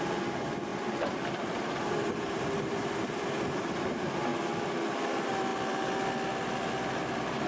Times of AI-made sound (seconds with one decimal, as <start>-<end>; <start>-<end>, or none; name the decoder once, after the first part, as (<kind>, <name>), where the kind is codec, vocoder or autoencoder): 0.7-3.2 (vocoder, BigVGAN v2)